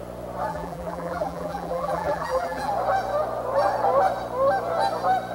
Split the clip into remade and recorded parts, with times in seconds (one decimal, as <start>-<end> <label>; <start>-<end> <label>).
0.0-0.5 recorded; 0.5-2.7 remade; 2.7-5.3 recorded